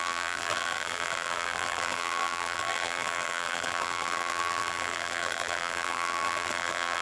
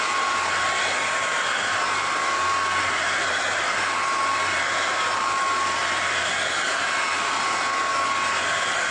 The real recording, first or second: second